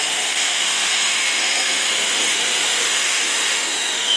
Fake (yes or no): yes